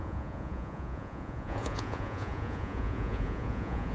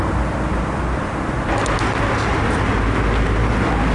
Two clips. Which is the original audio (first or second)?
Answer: second